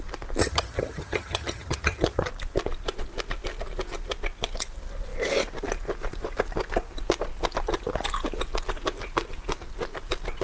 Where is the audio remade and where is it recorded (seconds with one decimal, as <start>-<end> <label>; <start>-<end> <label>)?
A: 0.0-0.4 recorded; 0.4-2.3 remade; 2.3-10.4 recorded